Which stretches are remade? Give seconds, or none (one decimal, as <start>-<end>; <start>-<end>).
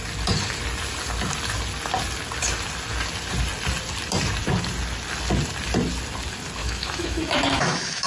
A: 6.6-8.1